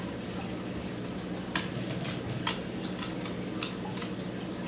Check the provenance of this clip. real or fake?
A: real